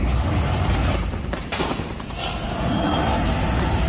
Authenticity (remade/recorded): remade